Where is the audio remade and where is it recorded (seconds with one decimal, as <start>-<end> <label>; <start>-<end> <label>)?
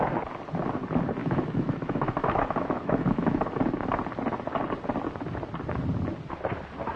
0.0-1.2 recorded; 1.2-3.6 remade; 3.6-7.0 recorded